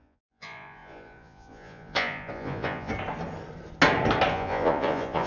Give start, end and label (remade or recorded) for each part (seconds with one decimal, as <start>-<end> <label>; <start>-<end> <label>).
0.0-2.9 remade; 2.9-4.3 recorded; 4.3-5.3 remade